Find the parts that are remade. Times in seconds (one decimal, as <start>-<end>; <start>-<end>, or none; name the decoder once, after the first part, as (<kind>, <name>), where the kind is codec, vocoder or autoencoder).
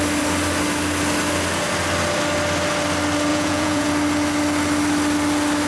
3.3-3.9 (vocoder, Vocos)